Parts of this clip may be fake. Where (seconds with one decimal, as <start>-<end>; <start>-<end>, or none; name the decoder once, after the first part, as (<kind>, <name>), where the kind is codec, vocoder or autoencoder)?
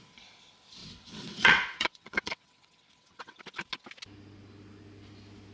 0.8-3.4 (vocoder, WaveNeXt)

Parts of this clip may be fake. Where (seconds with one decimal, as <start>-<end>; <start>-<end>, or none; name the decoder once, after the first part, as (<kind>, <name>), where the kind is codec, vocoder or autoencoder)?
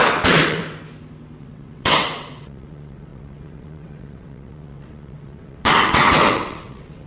0.0-0.6 (vocoder, WaveNeXt); 1.4-7.1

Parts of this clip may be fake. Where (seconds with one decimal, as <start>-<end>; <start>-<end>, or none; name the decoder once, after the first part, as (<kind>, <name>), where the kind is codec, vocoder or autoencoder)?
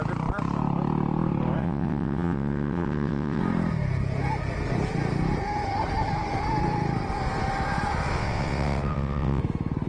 1.6-3.4 (vocoder, WaveNeXt); 8.1-9.4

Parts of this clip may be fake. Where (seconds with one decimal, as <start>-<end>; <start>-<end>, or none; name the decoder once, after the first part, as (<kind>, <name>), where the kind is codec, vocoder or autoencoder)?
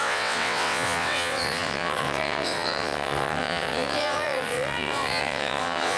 0.0-6.0 (vocoder, WaveNeXt)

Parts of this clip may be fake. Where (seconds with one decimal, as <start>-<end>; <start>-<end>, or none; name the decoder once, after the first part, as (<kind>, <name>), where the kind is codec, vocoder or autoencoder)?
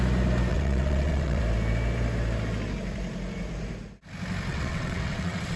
0.5-1.4 (vocoder, WaveNeXt); 4.5-5.6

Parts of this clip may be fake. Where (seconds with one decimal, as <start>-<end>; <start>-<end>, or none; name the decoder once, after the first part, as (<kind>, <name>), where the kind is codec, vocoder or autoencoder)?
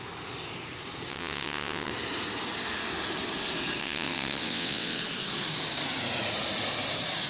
1.1-1.9 (vocoder, WaveNeXt); 3.8-5.0